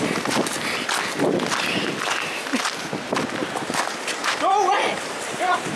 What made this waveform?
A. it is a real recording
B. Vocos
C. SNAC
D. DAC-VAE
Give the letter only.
A